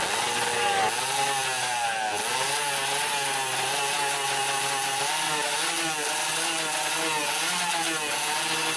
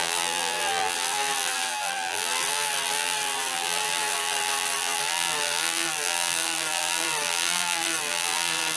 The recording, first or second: first